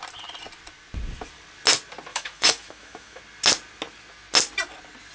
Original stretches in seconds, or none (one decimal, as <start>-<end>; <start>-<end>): 0.0-2.1; 3.2-5.1